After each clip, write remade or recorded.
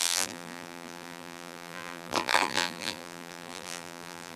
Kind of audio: remade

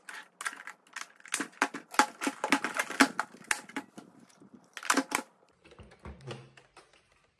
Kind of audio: recorded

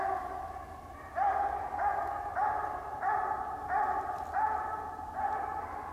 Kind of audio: recorded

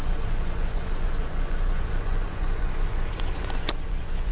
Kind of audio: remade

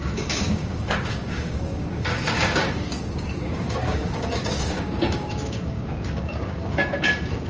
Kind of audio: remade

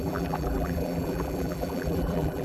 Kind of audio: remade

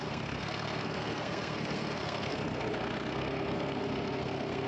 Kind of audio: remade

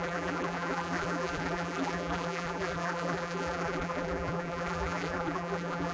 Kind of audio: remade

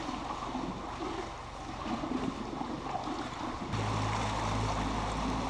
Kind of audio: recorded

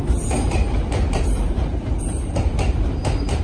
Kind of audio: remade